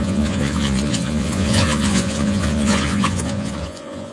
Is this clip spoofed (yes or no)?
yes